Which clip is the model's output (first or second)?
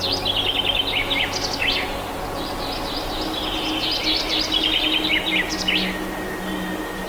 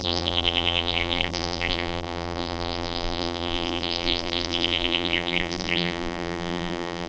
second